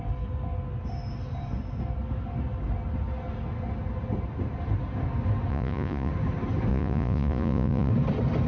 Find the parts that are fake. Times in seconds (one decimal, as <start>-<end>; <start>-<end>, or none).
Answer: 5.5-6.1; 6.7-7.9